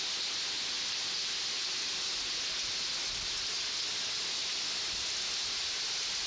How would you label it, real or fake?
real